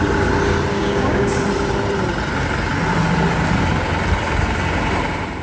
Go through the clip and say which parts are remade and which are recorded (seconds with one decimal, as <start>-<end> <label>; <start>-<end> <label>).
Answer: 0.0-0.7 recorded; 0.7-1.4 remade; 1.4-5.4 recorded